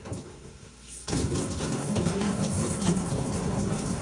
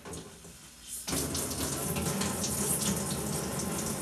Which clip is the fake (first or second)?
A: first